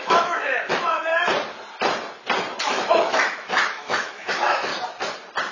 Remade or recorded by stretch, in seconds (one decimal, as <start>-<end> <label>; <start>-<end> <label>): 0.0-1.1 remade; 1.1-2.6 recorded; 2.6-4.7 remade; 4.7-5.5 recorded

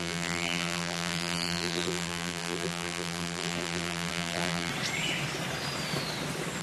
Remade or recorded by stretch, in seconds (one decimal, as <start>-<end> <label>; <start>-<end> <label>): 0.0-4.7 remade; 4.7-6.6 recorded

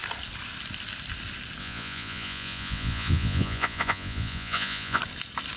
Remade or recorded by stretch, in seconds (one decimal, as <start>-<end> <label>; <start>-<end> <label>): 0.0-1.6 recorded; 1.6-5.0 remade; 5.0-5.6 recorded